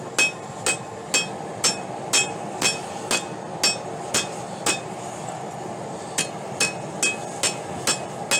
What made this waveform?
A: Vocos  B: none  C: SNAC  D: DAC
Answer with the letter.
B